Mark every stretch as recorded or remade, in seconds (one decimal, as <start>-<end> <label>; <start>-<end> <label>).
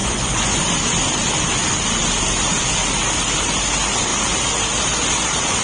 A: 0.0-0.7 remade; 0.7-5.6 recorded